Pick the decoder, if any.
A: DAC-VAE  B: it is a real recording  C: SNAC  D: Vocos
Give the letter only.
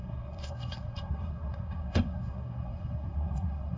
C